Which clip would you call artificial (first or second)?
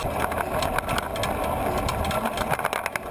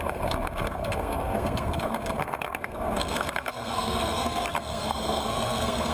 second